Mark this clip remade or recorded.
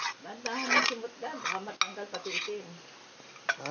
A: recorded